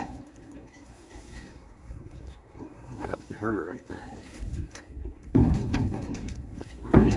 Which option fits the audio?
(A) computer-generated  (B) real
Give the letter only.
A